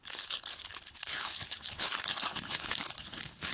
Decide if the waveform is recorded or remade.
remade